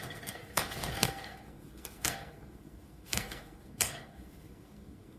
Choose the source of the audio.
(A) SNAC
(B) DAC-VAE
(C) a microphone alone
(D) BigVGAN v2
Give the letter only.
A